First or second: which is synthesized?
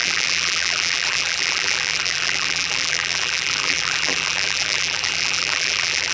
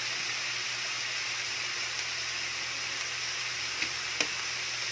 first